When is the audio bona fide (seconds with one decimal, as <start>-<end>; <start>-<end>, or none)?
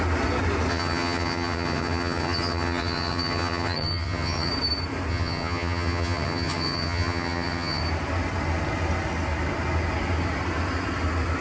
0.0-0.7; 4.5-5.1; 7.8-11.4